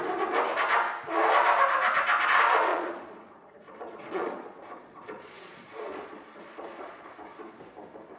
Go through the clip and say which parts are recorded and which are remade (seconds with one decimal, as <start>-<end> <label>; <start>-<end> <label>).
0.0-2.7 recorded; 2.7-7.6 remade; 7.6-8.2 recorded